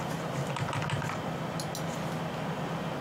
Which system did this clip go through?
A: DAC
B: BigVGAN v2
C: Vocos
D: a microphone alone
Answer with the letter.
D